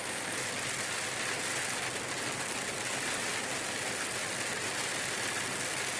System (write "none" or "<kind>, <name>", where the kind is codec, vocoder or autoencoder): none